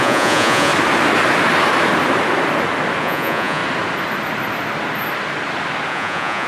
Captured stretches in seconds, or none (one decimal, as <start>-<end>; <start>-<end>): 0.7-3.0; 3.6-5.9